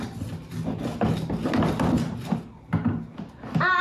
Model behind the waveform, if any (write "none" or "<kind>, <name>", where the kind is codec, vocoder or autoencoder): none